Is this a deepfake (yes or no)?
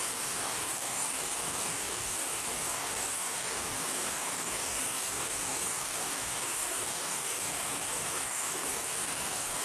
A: yes